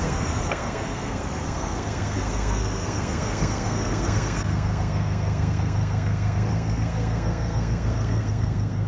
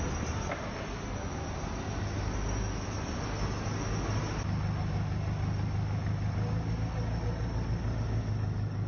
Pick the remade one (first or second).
first